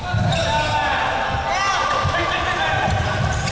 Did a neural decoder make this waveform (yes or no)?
no